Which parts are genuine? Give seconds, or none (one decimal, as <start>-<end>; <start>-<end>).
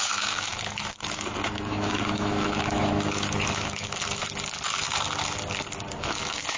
4.2-6.0